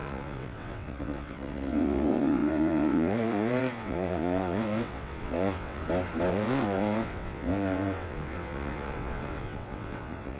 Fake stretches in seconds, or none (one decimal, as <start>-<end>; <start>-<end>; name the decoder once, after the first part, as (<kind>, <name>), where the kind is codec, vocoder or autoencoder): 0.0-5.8 (vocoder, WaveNeXt); 6.3-10.4